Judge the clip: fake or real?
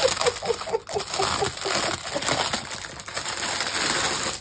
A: real